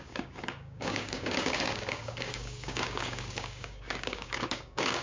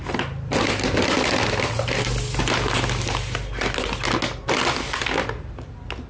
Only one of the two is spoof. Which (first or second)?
first